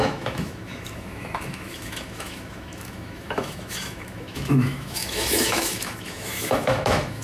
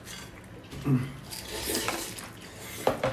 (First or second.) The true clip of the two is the second